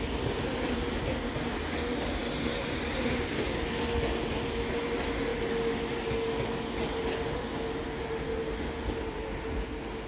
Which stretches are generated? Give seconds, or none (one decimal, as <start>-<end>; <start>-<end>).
none